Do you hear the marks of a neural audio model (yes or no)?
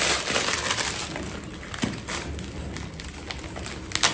no